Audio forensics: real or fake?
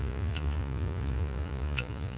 fake